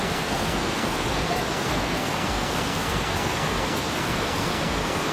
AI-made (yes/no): yes